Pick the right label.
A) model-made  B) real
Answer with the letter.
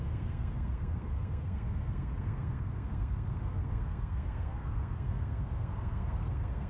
A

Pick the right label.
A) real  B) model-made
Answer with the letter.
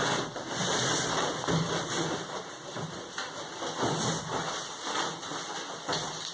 A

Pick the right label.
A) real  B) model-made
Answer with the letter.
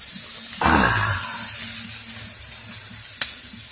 A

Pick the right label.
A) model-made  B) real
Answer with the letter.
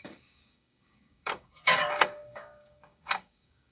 A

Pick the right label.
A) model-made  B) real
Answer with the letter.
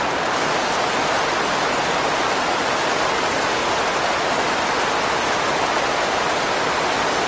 B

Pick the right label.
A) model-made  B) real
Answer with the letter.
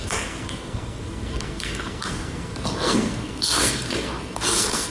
A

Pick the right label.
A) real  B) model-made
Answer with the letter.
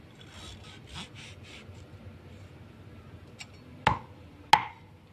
A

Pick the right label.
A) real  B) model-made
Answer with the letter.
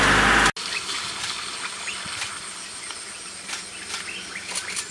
A